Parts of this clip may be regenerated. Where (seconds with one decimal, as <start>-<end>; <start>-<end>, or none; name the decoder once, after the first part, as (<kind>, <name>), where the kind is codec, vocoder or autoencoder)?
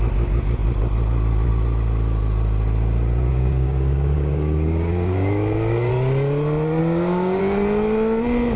3.3-5.9 (codec, DAC); 6.8-7.4